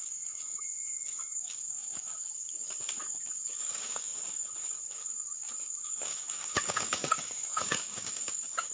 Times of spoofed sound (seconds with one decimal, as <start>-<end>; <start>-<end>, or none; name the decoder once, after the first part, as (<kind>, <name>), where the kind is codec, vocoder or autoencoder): 0.0-8.7 (codec, DAC)